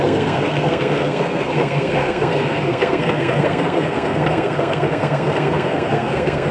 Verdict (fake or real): fake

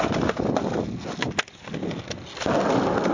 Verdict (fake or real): real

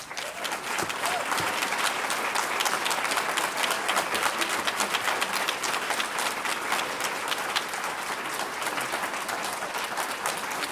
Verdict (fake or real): real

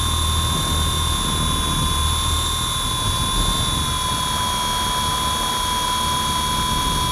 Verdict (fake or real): real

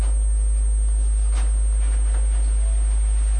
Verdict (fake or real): real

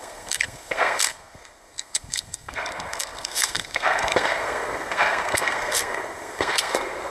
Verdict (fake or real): fake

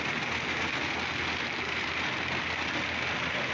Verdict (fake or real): real